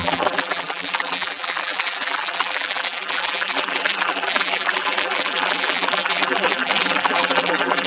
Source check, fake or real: fake